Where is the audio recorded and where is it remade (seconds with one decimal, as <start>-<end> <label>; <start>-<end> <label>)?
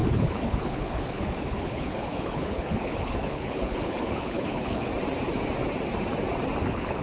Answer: 0.0-4.9 remade; 4.9-6.6 recorded; 6.6-7.0 remade